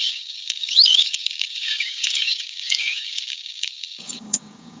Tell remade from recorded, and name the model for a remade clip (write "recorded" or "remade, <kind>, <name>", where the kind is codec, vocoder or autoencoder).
remade, codec, DAC